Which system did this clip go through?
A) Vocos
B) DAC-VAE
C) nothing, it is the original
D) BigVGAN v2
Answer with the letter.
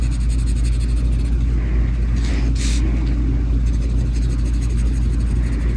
C